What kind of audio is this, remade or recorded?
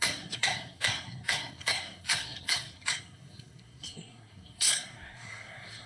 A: remade